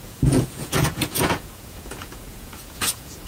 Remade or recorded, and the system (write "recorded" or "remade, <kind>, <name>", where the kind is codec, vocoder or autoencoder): remade, vocoder, Vocos